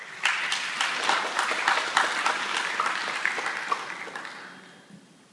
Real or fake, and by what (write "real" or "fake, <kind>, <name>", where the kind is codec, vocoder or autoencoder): real